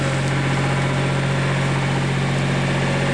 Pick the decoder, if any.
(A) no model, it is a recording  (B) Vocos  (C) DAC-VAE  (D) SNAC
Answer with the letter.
A